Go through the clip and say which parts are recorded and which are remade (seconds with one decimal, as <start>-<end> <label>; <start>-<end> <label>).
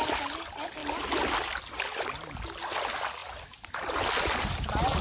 0.0-5.0 recorded